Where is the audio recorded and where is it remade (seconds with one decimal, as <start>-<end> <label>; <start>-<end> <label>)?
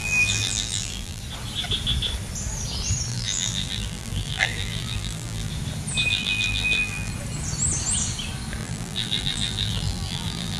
0.0-1.2 remade; 1.2-3.1 recorded; 3.1-5.5 remade; 5.5-6.1 recorded; 6.1-7.1 remade; 7.1-8.6 recorded; 8.6-10.6 remade